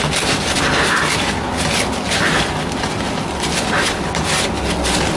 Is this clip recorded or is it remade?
recorded